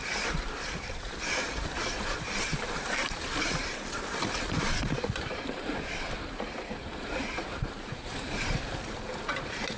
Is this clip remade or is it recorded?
remade